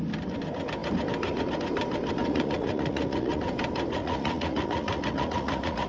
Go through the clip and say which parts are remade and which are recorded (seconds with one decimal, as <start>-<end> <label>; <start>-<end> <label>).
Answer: 0.0-2.2 recorded; 2.2-3.4 remade; 3.4-4.0 recorded; 4.0-5.9 remade